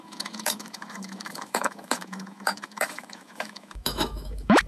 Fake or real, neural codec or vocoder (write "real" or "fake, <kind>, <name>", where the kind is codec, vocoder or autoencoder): fake, autoencoder, DAC-VAE